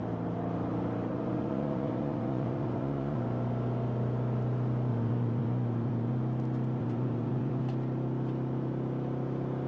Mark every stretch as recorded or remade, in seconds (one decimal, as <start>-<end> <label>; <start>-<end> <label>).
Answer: 0.0-1.1 recorded; 1.1-3.2 remade; 3.2-4.9 recorded; 4.9-6.1 remade; 6.1-6.8 recorded; 6.8-7.6 remade; 7.6-9.7 recorded